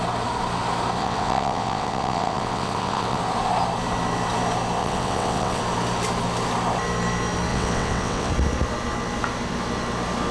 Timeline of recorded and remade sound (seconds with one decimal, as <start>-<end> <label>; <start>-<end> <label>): 0.0-1.0 recorded; 1.0-3.2 remade; 3.2-4.8 recorded; 4.8-5.6 remade; 5.6-7.5 recorded; 7.5-8.3 remade; 8.3-10.3 recorded